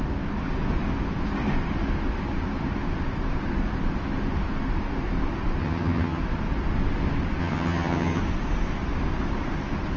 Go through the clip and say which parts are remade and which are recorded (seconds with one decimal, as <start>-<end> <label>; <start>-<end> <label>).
0.0-5.6 recorded; 5.6-6.2 remade; 6.2-7.4 recorded; 7.4-8.2 remade; 8.2-10.0 recorded

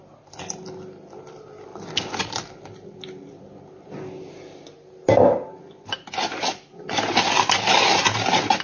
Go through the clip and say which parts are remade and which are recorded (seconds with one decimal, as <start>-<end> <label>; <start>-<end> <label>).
0.0-8.6 recorded

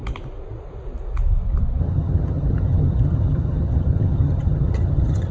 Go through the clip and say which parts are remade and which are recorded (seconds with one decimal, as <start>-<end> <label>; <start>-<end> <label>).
0.0-1.8 recorded; 1.8-5.3 remade

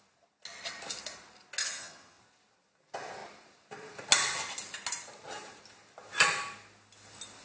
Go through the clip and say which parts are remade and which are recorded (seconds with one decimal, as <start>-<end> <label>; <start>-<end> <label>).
0.0-1.6 recorded; 1.6-2.2 remade; 2.2-7.4 recorded